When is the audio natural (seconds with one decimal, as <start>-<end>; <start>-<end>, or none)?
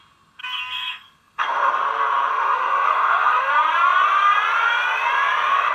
0.0-0.4; 1.7-2.3; 3.5-5.7